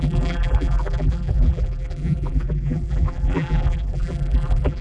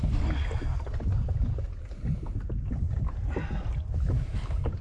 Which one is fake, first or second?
first